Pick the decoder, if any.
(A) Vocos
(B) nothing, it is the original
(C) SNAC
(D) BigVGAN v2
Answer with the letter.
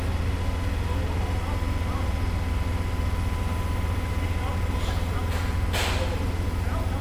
B